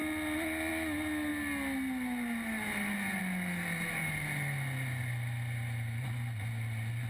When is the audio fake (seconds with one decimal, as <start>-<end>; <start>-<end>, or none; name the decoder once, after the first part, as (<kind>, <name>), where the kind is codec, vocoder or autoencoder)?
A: none